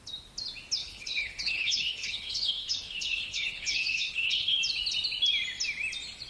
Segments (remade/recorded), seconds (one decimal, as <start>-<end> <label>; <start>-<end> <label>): 0.0-0.8 recorded; 0.8-4.6 remade; 4.6-6.3 recorded